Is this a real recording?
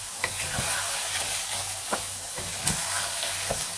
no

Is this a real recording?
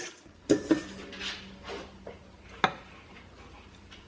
yes